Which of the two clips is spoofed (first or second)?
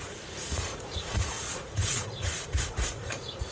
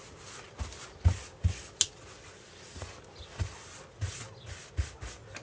first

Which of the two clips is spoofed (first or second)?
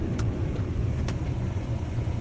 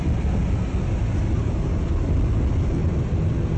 first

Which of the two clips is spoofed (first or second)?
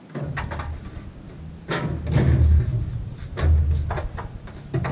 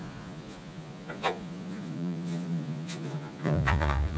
second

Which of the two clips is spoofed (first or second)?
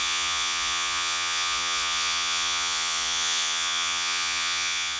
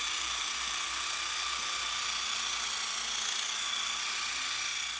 first